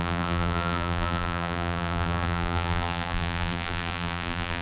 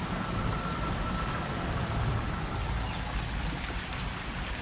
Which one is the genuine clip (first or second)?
second